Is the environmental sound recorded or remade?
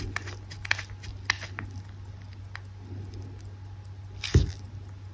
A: recorded